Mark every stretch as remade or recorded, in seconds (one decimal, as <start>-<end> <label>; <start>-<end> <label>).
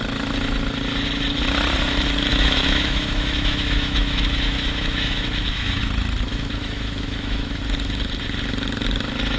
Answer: 0.0-2.3 recorded; 2.3-5.8 remade; 5.8-6.3 recorded; 6.3-7.6 remade; 7.6-9.4 recorded